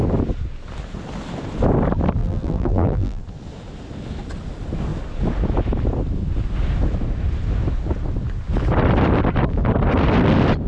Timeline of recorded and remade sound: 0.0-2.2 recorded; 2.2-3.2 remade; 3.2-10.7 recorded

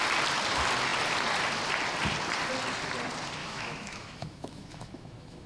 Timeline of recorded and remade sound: 0.0-3.4 recorded; 3.4-5.5 remade

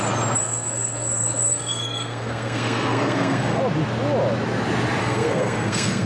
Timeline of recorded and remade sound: 0.0-0.4 recorded; 0.4-3.6 remade; 3.6-5.0 recorded; 5.0-6.1 remade

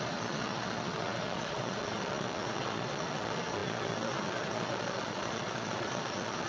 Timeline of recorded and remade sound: 0.0-6.5 remade

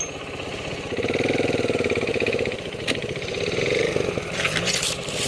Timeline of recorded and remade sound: 0.0-5.3 recorded

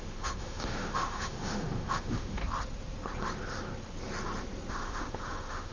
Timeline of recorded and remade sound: 0.0-2.4 remade; 2.4-4.7 recorded; 4.7-5.7 remade

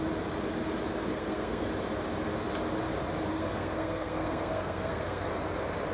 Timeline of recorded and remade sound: 0.0-1.1 recorded; 1.1-1.7 remade; 1.7-3.3 recorded; 3.3-5.3 remade; 5.3-5.9 recorded

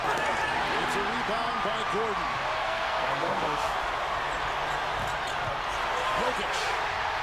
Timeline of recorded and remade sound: 0.0-2.6 recorded; 2.6-3.7 remade; 3.7-7.2 recorded